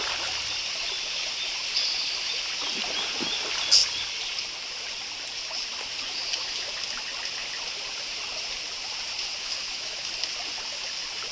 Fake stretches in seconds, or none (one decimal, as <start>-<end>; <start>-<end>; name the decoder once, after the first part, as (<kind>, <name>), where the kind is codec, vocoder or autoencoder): 9.4-10.1 (autoencoder, DAC-VAE)